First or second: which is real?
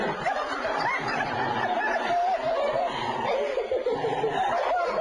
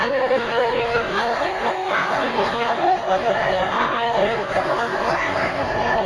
first